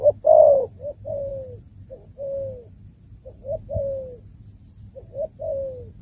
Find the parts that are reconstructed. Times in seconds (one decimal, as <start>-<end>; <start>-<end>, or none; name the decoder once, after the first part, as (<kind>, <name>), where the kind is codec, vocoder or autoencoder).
none